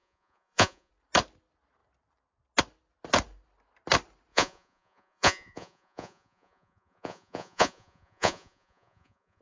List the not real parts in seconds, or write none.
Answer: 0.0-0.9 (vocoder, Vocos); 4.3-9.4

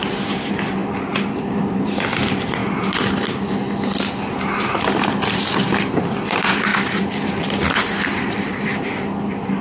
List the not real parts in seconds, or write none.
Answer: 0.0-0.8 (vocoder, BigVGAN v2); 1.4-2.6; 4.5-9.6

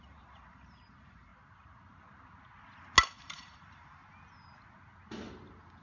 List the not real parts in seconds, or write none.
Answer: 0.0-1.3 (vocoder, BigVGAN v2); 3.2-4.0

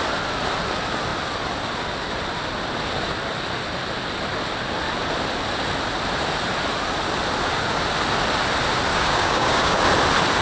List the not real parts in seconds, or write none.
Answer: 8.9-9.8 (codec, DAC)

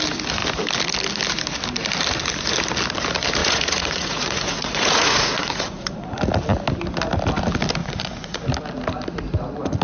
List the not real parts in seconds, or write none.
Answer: 3.4-6.2 (vocoder, Vocos); 7.8-8.4